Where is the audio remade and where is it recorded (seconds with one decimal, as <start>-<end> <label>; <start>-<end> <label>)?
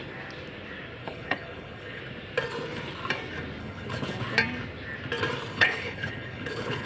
0.0-1.0 recorded; 1.0-2.0 remade; 2.0-3.6 recorded; 3.6-4.2 remade; 4.2-5.5 recorded; 5.5-6.9 remade